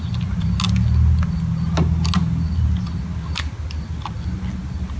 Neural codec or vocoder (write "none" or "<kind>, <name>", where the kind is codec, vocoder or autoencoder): none